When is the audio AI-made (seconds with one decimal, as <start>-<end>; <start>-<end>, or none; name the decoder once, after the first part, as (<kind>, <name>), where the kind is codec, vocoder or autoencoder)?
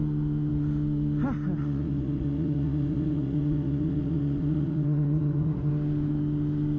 1.6-5.7 (vocoder, Vocos)